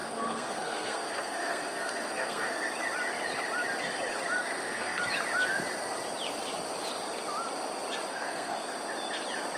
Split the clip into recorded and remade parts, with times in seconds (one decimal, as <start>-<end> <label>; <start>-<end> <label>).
0.0-2.7 remade; 2.7-4.4 recorded; 4.4-5.0 remade; 5.0-8.1 recorded; 8.1-8.7 remade; 8.7-9.6 recorded